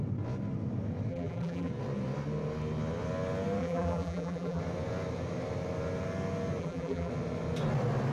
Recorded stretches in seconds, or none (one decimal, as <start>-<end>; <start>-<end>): 0.0-1.1; 1.7-3.6; 4.6-6.6; 7.1-8.1

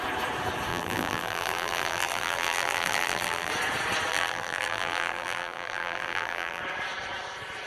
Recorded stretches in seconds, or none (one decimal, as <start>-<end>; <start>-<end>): 0.0-0.7; 3.5-4.1; 6.6-7.7

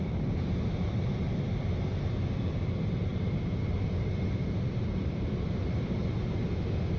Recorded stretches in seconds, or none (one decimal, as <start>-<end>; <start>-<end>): 1.9-2.5

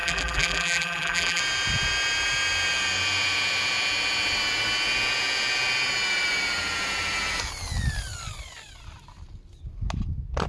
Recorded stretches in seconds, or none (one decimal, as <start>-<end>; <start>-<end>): 1.4-10.5